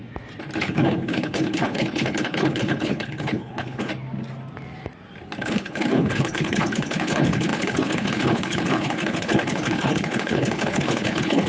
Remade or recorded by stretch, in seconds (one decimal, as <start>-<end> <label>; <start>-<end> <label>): 0.0-0.6 recorded; 0.6-3.9 remade; 3.9-5.4 recorded; 5.4-11.5 remade